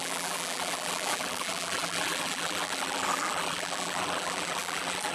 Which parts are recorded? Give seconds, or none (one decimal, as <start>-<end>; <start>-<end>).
none